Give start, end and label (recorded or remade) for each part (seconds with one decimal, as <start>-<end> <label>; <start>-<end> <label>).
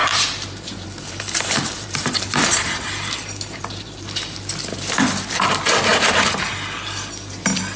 0.0-4.5 remade; 4.5-7.8 recorded